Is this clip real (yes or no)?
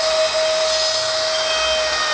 yes